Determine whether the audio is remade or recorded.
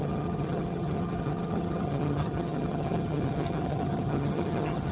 remade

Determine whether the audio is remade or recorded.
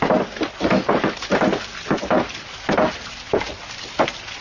recorded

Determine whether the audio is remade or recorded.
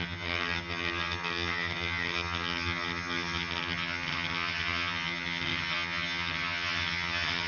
remade